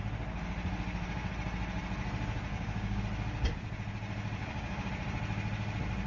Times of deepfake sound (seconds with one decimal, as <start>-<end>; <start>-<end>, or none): 2.5-3.0; 4.4-4.9